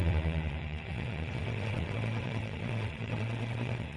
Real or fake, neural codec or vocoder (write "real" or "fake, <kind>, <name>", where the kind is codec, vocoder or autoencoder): fake, vocoder, WaveNeXt